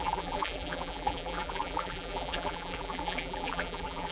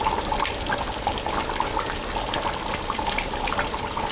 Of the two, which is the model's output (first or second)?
first